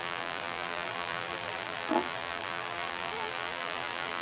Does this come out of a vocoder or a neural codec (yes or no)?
yes